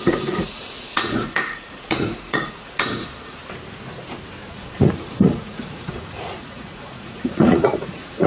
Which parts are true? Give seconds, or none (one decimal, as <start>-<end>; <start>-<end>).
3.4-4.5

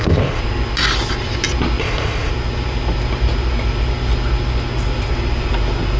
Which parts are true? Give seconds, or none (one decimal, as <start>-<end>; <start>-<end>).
0.4-1.8; 2.3-6.0

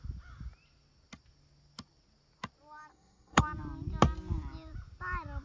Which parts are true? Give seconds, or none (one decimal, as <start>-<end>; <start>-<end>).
0.0-2.9; 3.4-5.4

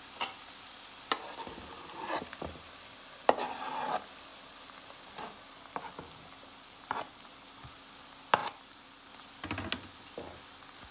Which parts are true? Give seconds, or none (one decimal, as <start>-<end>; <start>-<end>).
0.0-10.9

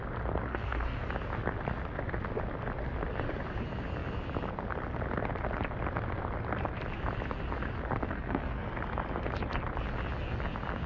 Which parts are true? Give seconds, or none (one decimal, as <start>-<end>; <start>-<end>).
0.0-0.5; 1.1-8.1; 8.7-10.9

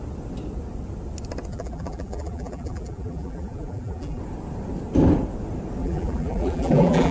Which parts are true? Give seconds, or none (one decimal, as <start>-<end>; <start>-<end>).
0.0-1.5; 4.2-5.8

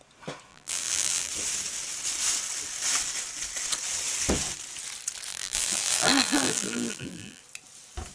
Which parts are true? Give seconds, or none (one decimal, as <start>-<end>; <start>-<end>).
0.0-0.5; 1.3-5.3; 7.4-8.1

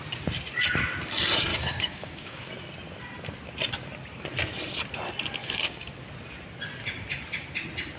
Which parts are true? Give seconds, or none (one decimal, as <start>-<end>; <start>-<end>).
0.0-1.5; 2.5-5.4; 5.9-8.0